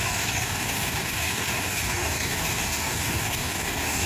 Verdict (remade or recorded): remade